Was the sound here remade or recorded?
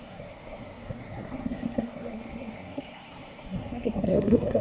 remade